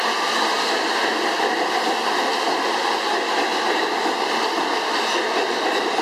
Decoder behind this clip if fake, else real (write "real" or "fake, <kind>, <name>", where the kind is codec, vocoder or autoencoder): real